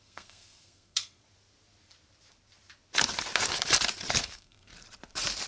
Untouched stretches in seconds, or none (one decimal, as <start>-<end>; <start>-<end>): 1.2-4.2; 4.7-5.5